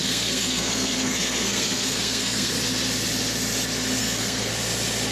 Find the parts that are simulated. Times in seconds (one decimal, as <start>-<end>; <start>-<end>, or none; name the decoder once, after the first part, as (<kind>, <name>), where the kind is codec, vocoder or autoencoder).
0.0-2.5 (codec, SNAC); 4.0-4.5